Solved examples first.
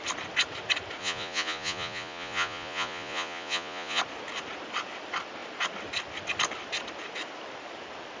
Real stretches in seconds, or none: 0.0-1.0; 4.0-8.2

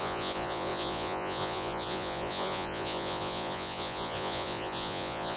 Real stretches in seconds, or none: none

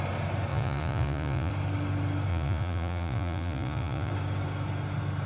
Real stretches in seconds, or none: 0.0-0.5; 1.5-2.3; 4.1-5.3

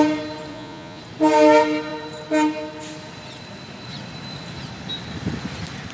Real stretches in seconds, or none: 0.0-0.5; 1.0-5.9

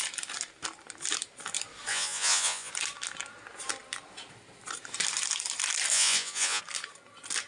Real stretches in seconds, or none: 0.0-1.9; 2.7-5.9; 6.6-7.5

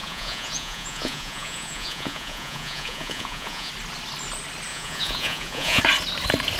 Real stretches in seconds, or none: 3.7-4.7; 5.8-6.6